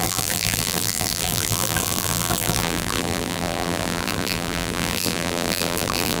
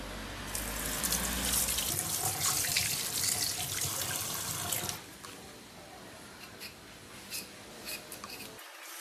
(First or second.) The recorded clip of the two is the second